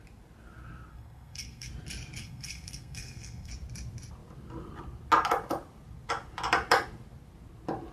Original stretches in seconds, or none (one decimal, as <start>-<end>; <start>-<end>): 0.0-0.9; 1.7-2.2; 3.5-7.9